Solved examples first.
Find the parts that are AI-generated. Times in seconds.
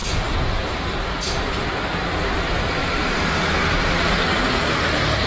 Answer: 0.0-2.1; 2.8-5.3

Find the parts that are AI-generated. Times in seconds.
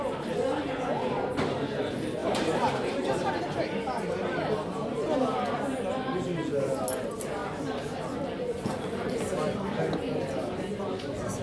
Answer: 2.2-3.4; 7.4-10.2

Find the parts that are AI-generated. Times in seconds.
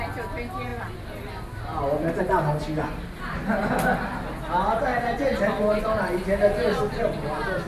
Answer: none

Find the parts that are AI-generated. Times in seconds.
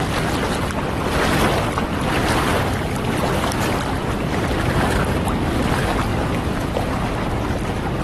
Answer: 6.1-7.1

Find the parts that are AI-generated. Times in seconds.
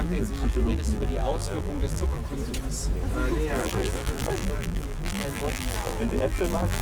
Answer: 0.0-2.2; 3.5-6.8